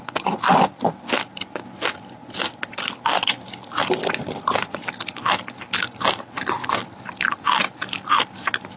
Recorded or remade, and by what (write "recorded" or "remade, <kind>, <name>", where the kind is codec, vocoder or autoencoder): recorded